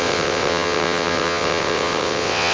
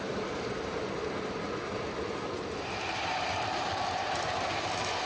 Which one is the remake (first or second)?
first